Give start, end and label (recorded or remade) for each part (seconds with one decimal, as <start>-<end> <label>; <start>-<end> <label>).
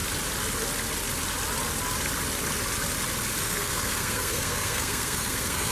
0.0-3.4 recorded; 3.4-5.7 remade